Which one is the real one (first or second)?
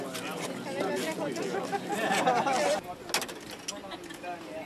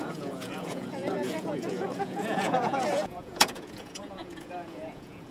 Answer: first